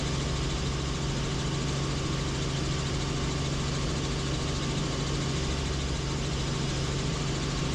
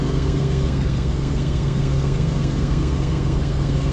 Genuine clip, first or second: first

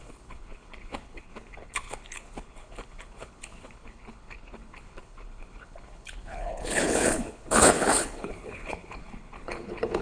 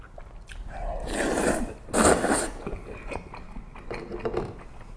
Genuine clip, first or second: second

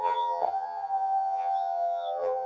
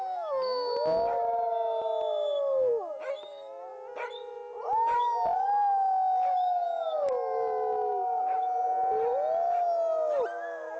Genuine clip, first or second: second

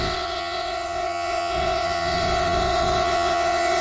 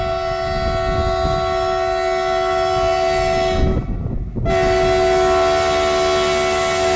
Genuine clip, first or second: second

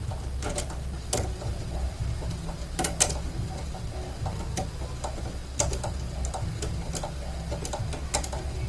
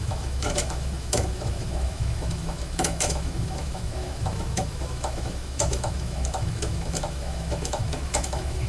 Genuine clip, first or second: first